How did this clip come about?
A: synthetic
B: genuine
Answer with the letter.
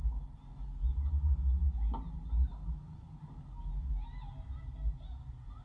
B